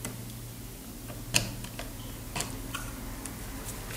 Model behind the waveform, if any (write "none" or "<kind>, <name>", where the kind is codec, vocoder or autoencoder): none